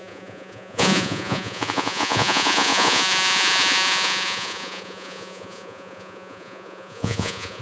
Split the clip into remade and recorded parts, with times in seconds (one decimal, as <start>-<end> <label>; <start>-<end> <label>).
0.0-7.6 remade